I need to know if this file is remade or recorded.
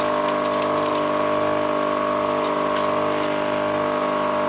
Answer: recorded